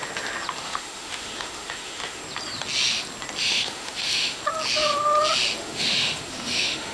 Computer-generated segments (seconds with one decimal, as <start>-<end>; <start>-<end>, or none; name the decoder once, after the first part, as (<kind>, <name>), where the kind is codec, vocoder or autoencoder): 0.6-2.2 (autoencoder, DAC-VAE); 3.4-4.4; 5.6-6.9

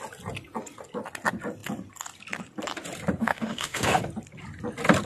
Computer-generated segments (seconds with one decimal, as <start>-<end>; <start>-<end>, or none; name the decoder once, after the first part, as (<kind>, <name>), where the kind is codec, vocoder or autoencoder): 3.2-4.0 (autoencoder, DAC-VAE)

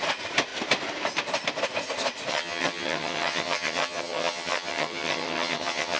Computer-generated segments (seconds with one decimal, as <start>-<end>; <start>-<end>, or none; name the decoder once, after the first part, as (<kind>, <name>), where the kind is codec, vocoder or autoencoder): 2.3-6.0 (vocoder, HiFi-GAN)

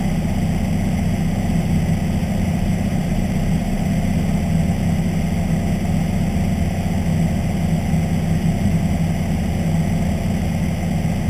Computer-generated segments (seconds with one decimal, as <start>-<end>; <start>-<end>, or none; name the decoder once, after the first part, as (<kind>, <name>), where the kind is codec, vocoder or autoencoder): 2.2-3.9 (vocoder, BigVGAN v2)